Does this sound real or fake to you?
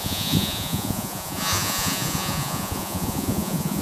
fake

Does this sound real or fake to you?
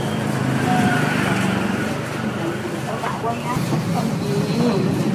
real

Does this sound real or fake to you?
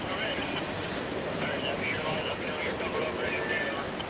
real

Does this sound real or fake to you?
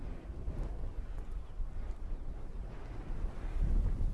real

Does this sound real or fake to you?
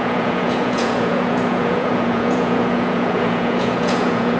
fake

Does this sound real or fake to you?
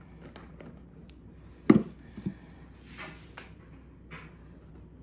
real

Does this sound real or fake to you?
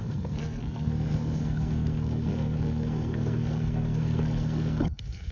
fake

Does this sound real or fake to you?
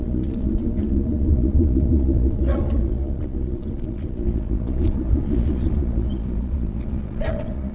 fake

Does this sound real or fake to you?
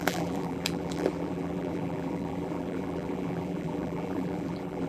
fake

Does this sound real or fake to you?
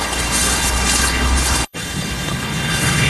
fake